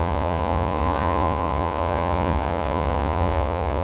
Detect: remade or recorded remade